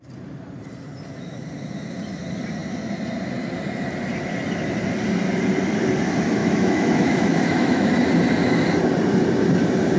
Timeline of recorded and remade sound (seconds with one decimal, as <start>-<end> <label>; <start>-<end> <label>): 0.0-6.4 recorded; 6.4-7.9 remade; 7.9-10.0 recorded